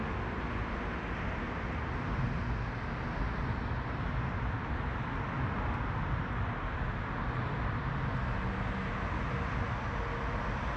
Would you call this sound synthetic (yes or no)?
no